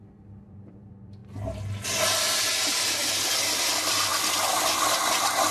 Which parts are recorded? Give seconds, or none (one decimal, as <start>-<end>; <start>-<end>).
1.2-3.4; 4.1-5.5

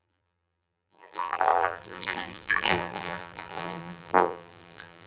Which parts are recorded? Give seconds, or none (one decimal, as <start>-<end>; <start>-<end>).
none

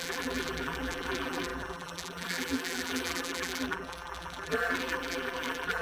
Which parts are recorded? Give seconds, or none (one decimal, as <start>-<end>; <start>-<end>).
none

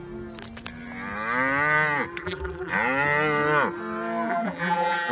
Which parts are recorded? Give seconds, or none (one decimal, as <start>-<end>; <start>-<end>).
0.0-2.2; 2.7-4.3

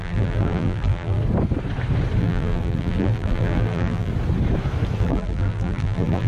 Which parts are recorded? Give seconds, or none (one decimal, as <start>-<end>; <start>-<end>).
1.2-2.2; 4.1-5.0

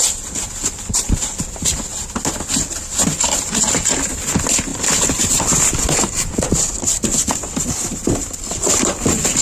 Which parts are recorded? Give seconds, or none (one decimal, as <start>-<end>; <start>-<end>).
1.9-3.2

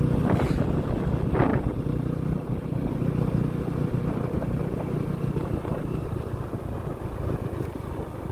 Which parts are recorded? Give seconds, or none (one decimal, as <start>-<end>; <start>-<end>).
0.0-1.5; 6.3-8.3

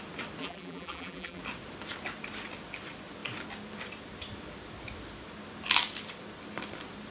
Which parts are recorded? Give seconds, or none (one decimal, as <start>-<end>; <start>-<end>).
0.0-0.4; 1.4-7.1